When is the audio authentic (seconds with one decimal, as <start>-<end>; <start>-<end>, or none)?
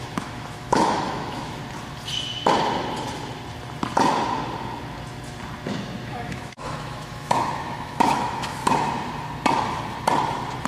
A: 1.6-6.1; 8.6-10.7